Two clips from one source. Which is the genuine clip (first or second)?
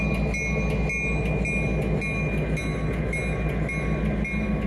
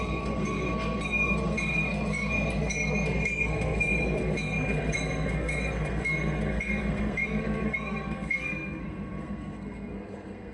first